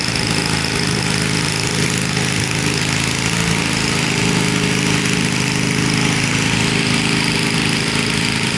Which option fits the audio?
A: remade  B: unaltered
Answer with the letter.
B